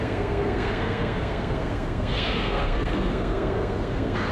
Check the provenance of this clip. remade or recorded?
remade